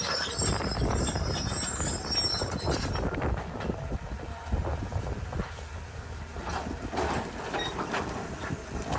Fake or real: real